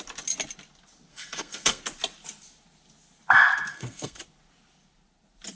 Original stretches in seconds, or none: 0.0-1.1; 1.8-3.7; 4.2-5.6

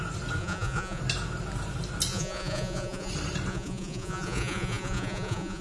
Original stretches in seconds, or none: 0.0-0.4; 1.0-2.1; 3.1-3.5

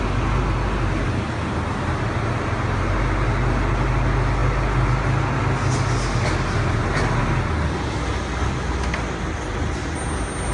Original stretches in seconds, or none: 0.0-10.5